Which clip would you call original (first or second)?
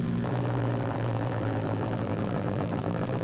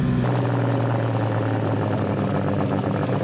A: second